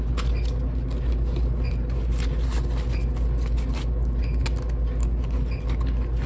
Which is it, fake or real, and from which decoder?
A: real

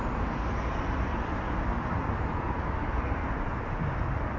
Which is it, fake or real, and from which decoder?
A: real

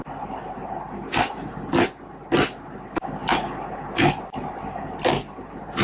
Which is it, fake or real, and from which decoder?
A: real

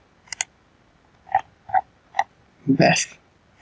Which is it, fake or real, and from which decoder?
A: real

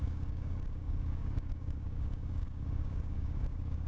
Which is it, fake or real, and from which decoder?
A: fake, codec, DAC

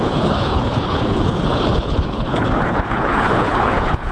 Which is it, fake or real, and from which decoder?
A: fake, codec, HILCodec